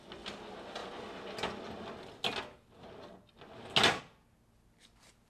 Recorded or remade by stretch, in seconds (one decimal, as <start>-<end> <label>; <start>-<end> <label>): 0.0-5.3 recorded